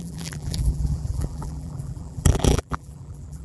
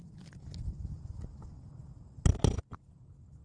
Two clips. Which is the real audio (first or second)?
second